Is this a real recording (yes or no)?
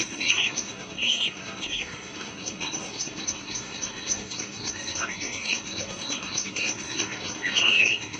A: no